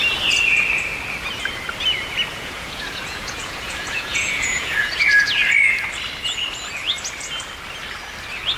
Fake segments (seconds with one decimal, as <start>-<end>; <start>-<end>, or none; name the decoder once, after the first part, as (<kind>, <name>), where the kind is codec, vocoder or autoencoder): 2.3-4.9 (vocoder, Vocos)